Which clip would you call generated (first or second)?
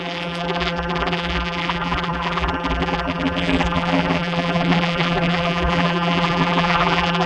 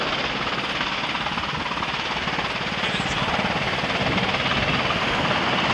first